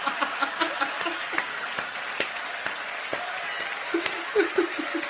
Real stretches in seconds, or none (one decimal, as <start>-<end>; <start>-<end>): 0.0-5.1